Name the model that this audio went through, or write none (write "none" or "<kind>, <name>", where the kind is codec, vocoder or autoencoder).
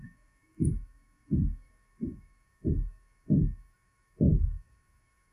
autoencoder, DAC-VAE